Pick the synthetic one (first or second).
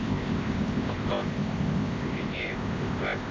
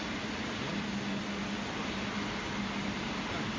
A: first